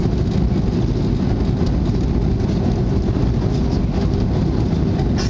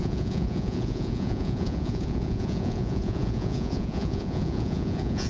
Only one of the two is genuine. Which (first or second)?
first